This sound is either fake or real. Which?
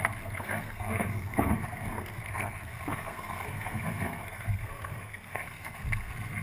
fake